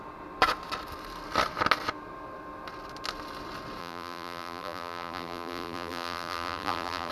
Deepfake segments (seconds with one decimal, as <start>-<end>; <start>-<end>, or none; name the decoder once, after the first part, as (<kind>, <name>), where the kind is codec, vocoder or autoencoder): 3.8-7.1 (vocoder, BigVGAN v2)